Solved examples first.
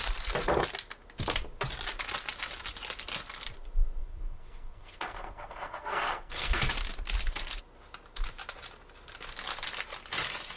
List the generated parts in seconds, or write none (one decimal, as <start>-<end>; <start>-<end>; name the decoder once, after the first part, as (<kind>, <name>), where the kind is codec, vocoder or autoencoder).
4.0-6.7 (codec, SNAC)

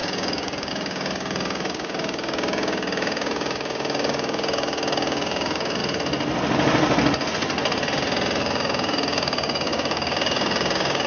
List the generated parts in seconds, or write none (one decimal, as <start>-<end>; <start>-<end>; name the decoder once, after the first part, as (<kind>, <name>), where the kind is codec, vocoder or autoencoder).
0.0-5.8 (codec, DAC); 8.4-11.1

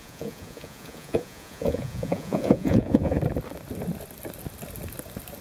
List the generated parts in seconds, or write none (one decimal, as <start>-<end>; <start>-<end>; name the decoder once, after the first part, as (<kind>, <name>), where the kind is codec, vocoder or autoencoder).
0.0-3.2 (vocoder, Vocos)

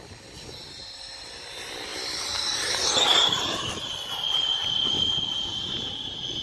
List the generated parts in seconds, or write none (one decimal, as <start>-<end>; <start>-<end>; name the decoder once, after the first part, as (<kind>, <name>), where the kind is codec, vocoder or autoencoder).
1.9-2.7 (vocoder, BigVGAN v2); 3.1-4.8

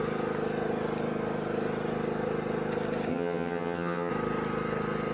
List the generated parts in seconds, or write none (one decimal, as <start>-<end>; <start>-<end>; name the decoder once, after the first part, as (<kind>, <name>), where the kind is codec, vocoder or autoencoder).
3.1-4.1 (vocoder, HiFi-GAN)

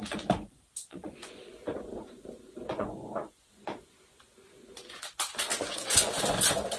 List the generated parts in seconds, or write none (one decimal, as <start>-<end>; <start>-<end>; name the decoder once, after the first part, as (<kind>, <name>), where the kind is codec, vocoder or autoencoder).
0.0-6.8 (vocoder, Vocos)

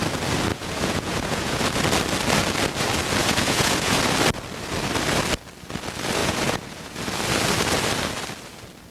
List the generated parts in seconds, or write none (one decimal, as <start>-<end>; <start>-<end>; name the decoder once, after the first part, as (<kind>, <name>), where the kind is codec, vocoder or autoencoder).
0.5-1.6 (vocoder, Vocos); 3.2-4.0; 6.2-7.0

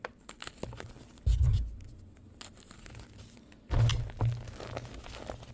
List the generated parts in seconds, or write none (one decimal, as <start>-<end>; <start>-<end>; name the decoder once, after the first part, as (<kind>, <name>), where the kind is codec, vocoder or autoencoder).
none